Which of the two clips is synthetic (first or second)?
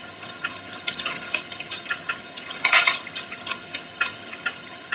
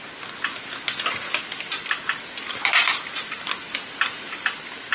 first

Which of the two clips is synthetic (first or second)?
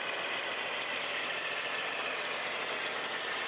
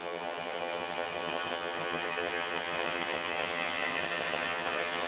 second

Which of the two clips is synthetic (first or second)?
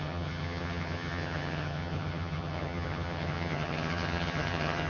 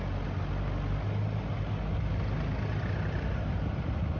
first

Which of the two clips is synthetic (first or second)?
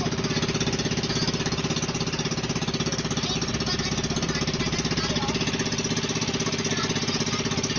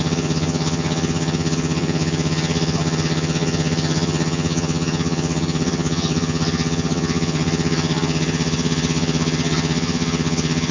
second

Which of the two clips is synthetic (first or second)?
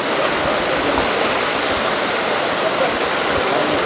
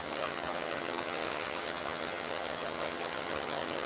second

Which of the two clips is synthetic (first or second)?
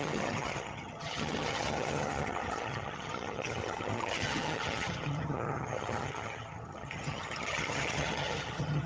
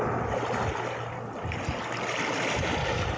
first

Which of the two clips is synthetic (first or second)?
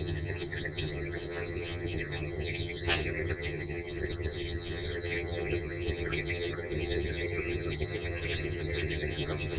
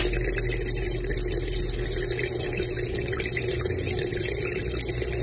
first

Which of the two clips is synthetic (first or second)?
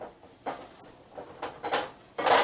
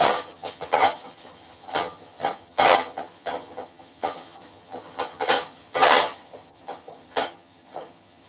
second